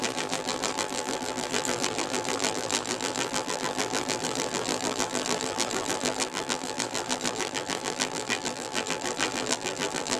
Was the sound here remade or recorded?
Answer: remade